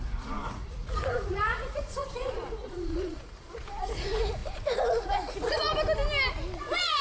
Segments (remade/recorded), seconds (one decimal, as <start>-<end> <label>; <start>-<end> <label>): 0.0-5.7 remade; 5.7-6.6 recorded; 6.6-7.0 remade